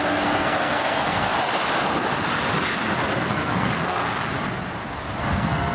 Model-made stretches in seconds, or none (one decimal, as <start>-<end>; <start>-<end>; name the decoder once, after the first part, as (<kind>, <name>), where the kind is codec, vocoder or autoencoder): 0.0-1.3 (codec, SNAC); 3.3-4.0; 5.2-5.7